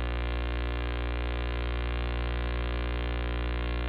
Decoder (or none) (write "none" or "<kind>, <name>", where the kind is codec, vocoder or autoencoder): autoencoder, DAC-VAE